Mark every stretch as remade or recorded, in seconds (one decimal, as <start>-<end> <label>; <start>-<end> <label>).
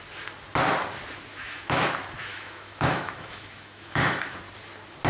0.0-1.3 recorded; 1.3-1.8 remade; 1.8-2.3 recorded; 2.3-4.4 remade; 4.4-5.1 recorded